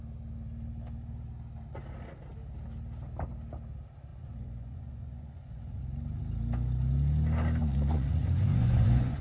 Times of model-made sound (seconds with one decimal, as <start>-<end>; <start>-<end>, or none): 4.1-5.8; 7.6-9.2